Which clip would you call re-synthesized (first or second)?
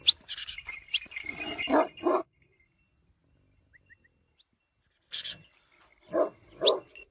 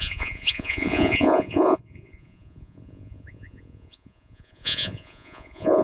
second